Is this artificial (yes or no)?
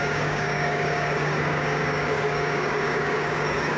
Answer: yes